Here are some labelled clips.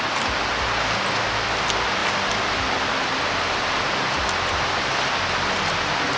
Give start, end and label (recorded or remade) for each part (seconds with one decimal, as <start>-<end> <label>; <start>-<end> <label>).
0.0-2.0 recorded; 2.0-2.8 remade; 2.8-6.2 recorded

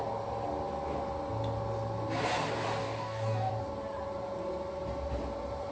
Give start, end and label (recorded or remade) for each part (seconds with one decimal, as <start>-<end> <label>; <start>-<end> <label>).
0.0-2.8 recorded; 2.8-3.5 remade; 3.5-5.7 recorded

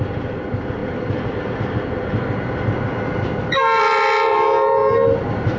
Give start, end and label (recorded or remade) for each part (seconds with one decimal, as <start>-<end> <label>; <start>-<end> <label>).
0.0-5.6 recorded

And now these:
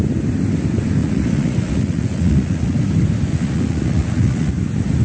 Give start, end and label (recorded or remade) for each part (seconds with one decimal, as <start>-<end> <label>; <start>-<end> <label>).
0.0-1.0 recorded; 1.0-2.8 remade; 2.8-3.3 recorded; 3.3-4.5 remade; 4.5-5.0 recorded

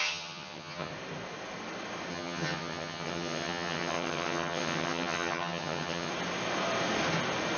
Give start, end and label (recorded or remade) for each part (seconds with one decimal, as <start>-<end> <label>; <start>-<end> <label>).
0.0-0.9 remade; 0.9-2.1 recorded; 2.1-6.1 remade; 6.1-7.6 recorded